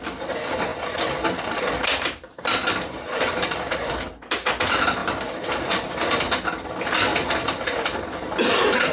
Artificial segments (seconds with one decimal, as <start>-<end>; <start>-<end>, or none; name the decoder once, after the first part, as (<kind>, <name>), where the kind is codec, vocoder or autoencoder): 0.7-3.9 (vocoder, BigVGAN v2); 5.0-5.9; 7.1-8.3